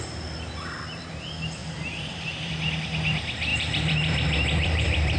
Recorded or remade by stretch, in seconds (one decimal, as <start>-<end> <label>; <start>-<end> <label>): 0.0-1.6 recorded; 1.6-2.5 remade; 2.5-3.5 recorded; 3.5-5.2 remade